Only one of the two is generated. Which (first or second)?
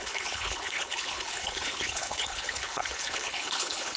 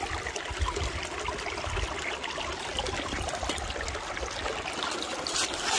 first